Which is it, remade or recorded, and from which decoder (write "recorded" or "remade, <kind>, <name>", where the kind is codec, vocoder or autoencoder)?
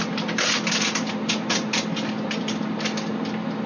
recorded